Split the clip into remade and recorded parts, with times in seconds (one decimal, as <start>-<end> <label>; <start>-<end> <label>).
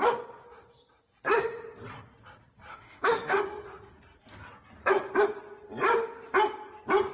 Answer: 0.0-2.7 recorded; 2.7-3.4 remade; 3.4-7.1 recorded